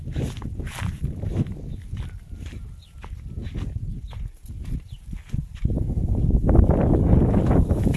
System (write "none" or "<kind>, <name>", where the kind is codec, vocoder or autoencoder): none